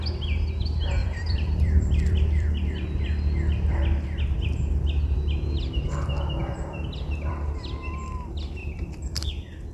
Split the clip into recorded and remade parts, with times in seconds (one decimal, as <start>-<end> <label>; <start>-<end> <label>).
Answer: 0.0-1.0 recorded; 1.0-2.7 remade; 2.7-6.4 recorded; 6.4-7.3 remade; 7.3-8.6 recorded; 8.6-9.7 remade